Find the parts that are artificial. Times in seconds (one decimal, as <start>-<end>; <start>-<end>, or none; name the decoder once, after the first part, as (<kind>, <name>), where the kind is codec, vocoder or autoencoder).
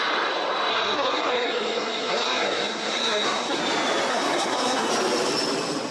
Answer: 0.7-3.6 (codec, SNAC); 4.1-4.9